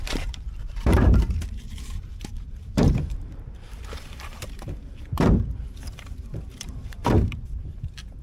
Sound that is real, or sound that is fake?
fake